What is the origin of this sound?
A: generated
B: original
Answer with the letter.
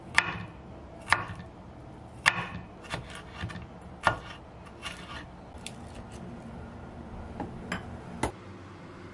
B